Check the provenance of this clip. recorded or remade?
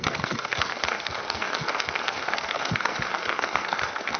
remade